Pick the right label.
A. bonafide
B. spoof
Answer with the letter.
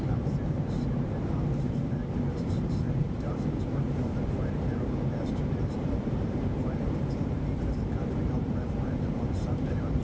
B